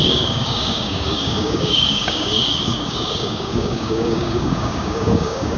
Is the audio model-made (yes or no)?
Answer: yes